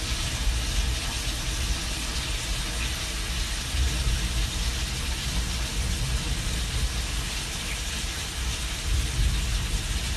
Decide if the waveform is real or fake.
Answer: real